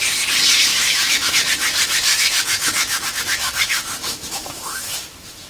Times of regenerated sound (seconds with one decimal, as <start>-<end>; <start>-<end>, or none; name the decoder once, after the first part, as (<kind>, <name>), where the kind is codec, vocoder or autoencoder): 0.7-1.3 (autoencoder, DAC-VAE); 2.1-5.5